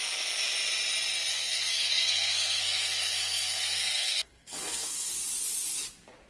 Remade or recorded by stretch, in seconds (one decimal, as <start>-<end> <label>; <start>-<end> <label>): 0.0-1.3 recorded; 1.3-5.1 remade; 5.1-6.3 recorded